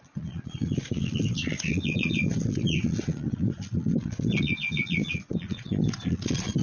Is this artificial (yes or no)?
yes